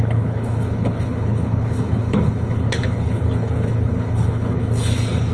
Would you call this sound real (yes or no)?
no